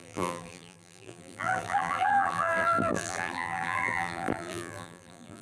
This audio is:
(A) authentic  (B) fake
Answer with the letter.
B